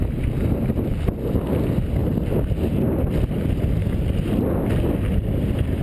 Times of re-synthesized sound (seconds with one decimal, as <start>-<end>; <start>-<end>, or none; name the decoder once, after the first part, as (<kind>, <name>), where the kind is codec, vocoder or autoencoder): 2.0-5.8 (vocoder, BigVGAN v2)